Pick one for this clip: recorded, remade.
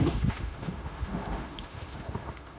remade